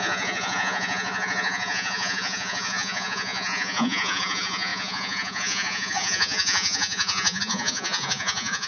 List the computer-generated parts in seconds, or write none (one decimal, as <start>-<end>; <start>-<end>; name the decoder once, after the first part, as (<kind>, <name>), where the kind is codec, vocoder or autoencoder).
0.0-8.7 (vocoder, Vocos)